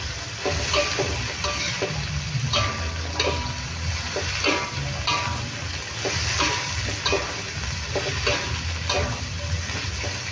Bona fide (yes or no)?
yes